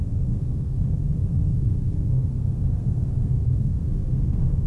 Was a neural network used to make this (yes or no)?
yes